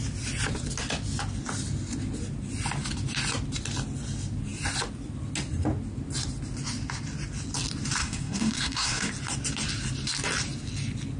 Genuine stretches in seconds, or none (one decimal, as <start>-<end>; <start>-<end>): 0.0-8.0; 9.1-11.2